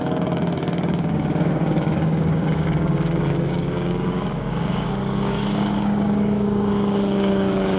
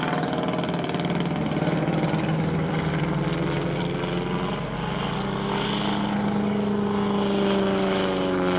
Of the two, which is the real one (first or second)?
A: second